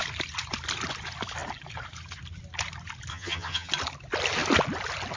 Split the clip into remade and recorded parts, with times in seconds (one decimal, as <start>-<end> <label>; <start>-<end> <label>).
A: 0.0-3.1 recorded; 3.1-3.7 remade; 3.7-5.2 recorded